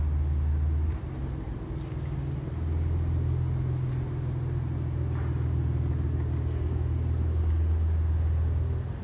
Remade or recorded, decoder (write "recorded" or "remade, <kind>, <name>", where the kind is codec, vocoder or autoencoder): recorded